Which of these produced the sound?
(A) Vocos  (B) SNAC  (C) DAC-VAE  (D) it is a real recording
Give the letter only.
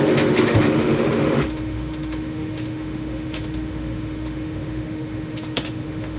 C